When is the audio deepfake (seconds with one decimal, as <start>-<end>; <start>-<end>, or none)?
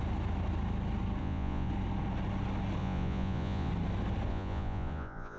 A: 1.2-1.7; 2.8-3.7; 4.3-5.4